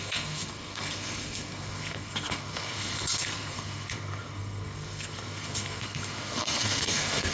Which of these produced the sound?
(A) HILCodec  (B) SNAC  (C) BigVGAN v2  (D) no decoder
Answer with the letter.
B